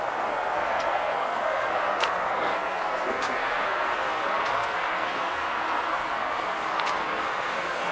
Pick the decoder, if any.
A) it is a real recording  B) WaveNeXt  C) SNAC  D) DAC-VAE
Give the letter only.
C